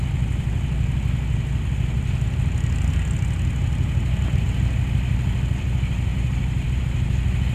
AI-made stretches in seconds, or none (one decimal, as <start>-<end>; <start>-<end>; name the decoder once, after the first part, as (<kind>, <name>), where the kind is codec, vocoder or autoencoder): none